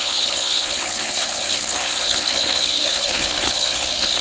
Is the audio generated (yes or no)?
yes